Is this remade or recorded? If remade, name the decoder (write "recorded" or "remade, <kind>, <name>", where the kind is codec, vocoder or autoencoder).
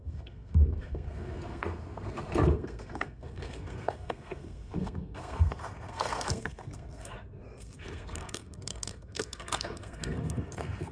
remade, codec, SNAC